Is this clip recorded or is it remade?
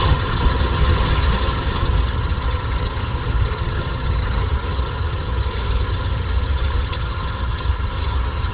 remade